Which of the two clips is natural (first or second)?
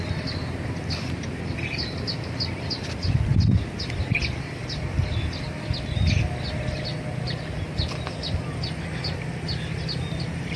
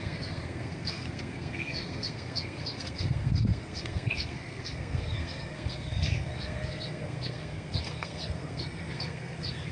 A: first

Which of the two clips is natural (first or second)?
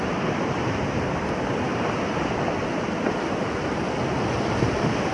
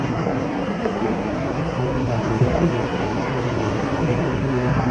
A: first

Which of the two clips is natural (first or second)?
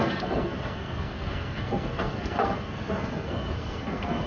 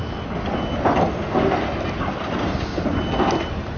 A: second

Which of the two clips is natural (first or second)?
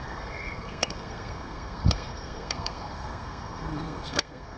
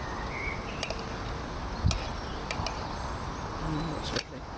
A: second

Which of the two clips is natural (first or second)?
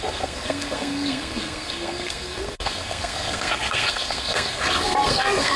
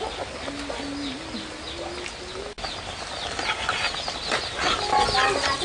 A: second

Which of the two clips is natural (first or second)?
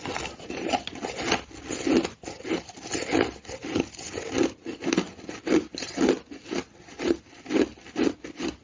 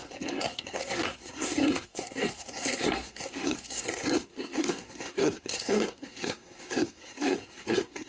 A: first